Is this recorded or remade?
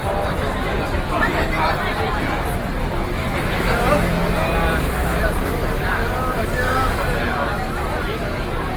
recorded